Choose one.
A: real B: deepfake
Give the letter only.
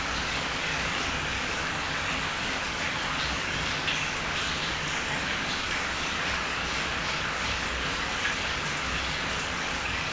B